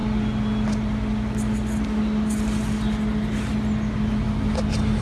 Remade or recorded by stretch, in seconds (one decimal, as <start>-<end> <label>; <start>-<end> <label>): 0.0-5.0 recorded